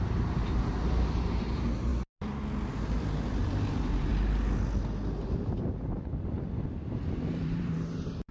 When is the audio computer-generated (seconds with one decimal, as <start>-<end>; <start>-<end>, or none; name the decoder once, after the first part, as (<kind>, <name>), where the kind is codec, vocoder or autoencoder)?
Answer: 0.0-1.9 (vocoder, BigVGAN v2); 2.7-4.1; 7.3-8.3